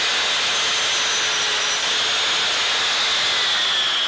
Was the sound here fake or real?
real